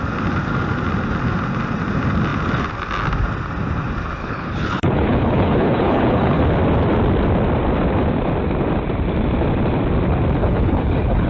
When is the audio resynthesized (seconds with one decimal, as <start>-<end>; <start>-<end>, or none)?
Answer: 4.2-6.4; 10.4-11.3